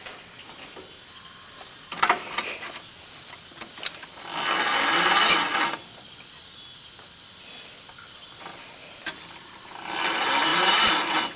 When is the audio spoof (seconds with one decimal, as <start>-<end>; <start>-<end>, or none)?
none